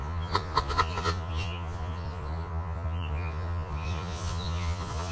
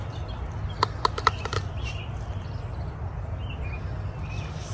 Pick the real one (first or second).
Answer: second